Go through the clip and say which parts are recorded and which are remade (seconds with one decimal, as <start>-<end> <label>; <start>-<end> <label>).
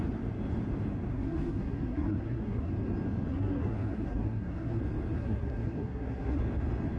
0.0-1.1 recorded; 1.1-2.7 remade; 2.7-3.3 recorded; 3.3-4.8 remade; 4.8-5.2 recorded; 5.2-6.4 remade; 6.4-7.0 recorded